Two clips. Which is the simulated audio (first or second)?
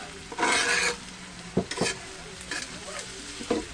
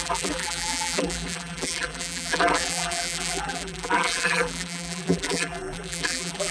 second